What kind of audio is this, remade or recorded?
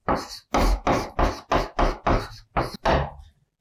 recorded